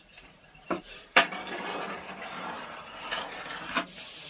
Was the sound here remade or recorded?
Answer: remade